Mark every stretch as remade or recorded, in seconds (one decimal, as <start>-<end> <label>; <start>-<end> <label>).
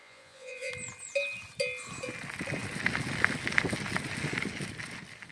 0.0-0.7 remade; 0.7-5.3 recorded